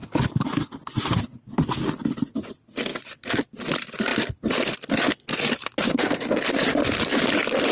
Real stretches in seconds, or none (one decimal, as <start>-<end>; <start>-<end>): 0.0-5.8; 6.4-7.7